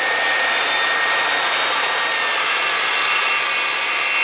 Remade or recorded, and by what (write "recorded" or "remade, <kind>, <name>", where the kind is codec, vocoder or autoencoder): recorded